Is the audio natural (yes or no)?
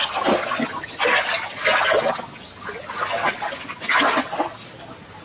yes